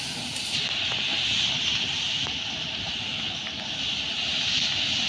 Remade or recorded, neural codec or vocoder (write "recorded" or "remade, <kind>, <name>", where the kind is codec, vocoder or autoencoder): recorded